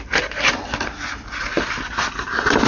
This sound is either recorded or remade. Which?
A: recorded